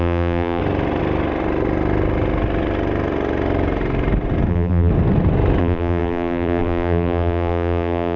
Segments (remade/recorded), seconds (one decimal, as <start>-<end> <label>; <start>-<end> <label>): 0.0-0.6 remade; 0.6-4.5 recorded; 4.5-4.9 remade; 4.9-5.6 recorded; 5.6-8.2 remade